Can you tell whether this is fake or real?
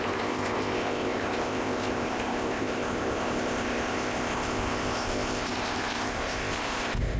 fake